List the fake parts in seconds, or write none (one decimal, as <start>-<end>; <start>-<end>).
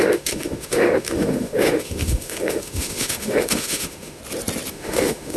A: 0.0-4.2; 4.7-5.4